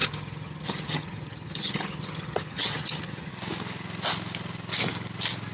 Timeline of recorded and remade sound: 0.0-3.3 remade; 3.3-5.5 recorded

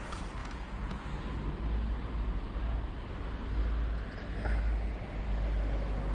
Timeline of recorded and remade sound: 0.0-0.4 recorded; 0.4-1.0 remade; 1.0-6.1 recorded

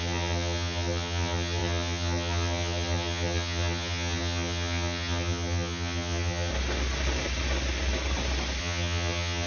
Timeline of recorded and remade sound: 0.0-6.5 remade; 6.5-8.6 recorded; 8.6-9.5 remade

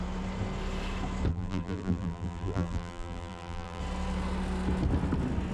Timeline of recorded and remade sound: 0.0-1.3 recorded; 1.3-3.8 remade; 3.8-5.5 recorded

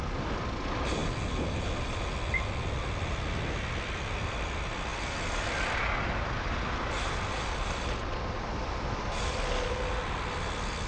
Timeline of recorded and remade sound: 0.0-10.9 recorded

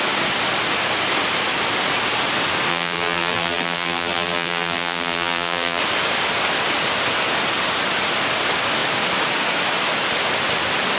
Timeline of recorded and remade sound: 0.0-2.7 recorded; 2.7-5.8 remade; 5.8-11.0 recorded

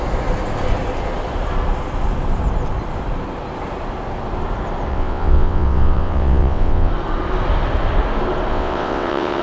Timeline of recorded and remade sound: 0.0-4.9 recorded; 4.9-6.9 remade; 6.9-8.5 recorded; 8.5-9.4 remade